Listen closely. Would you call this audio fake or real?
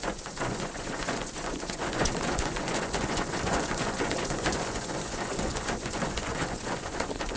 fake